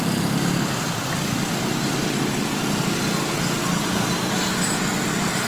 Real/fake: real